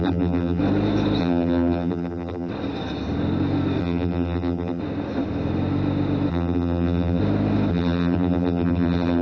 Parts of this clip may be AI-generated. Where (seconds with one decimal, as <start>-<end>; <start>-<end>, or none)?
0.0-0.6; 1.2-2.5; 3.8-4.8; 6.3-7.2; 7.7-9.2